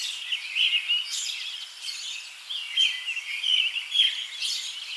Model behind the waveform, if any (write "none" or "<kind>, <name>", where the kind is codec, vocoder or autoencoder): none